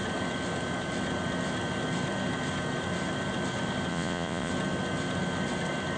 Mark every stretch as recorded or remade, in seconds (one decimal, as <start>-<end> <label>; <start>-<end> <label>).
0.0-3.9 recorded; 3.9-4.5 remade; 4.5-6.0 recorded